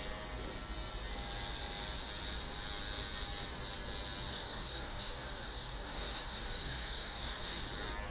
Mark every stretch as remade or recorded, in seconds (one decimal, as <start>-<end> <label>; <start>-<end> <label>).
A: 0.0-4.3 recorded; 4.3-7.6 remade; 7.6-8.1 recorded